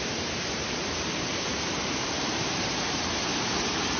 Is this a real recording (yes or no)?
no